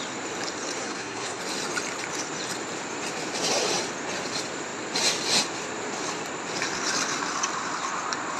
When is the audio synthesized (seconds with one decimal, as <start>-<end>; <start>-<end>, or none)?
0.8-1.4